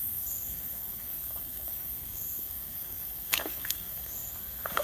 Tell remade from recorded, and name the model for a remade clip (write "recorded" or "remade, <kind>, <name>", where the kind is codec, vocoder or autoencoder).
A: remade, codec, SNAC